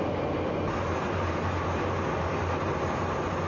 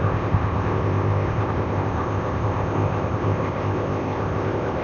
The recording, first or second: first